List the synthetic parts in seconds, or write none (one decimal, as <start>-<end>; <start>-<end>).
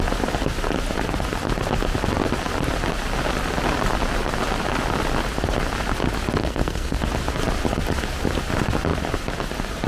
6.4-7.0